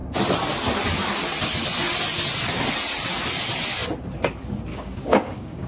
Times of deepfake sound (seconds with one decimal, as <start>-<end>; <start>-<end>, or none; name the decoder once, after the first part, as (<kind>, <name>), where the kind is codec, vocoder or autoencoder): 4.7-5.7 (codec, DAC)